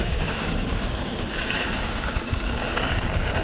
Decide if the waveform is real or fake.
fake